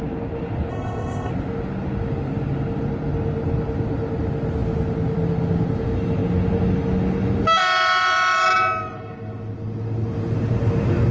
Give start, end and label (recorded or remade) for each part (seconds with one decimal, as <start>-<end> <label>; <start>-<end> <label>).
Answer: 0.0-0.7 recorded; 0.7-1.3 remade; 1.3-11.1 recorded